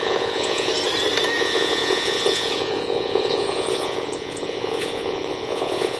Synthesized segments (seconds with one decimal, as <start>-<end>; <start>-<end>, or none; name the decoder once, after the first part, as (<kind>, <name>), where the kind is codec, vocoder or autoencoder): 0.0-0.7 (vocoder, Vocos); 1.4-6.0